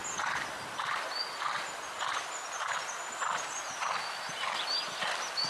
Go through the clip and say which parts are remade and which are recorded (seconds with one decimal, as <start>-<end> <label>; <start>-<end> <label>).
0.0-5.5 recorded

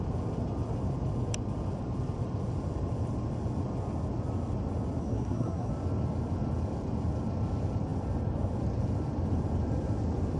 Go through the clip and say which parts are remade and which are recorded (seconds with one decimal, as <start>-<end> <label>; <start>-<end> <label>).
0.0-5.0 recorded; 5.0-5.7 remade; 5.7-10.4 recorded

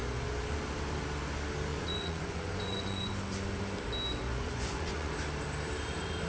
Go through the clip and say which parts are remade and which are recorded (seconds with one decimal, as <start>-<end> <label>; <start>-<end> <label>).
0.0-1.7 recorded; 1.7-3.1 remade; 3.1-4.3 recorded; 4.3-5.1 remade; 5.1-6.3 recorded

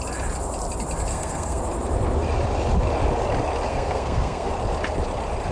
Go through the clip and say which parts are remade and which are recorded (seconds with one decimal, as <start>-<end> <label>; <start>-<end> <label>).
0.0-1.1 recorded; 1.1-1.6 remade; 1.6-3.7 recorded; 3.7-4.5 remade; 4.5-5.5 recorded